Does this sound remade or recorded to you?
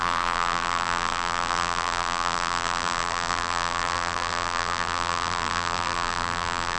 remade